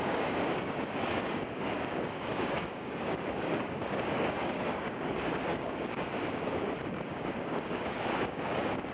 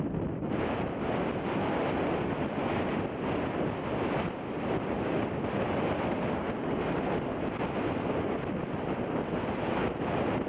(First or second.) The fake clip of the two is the first